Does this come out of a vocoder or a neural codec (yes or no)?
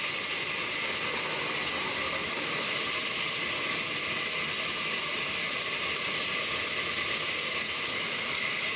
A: no